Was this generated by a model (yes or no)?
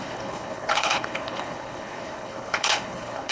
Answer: yes